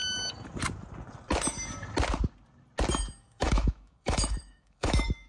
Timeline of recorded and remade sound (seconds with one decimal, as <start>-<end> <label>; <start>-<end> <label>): 0.0-3.2 recorded; 3.2-5.3 remade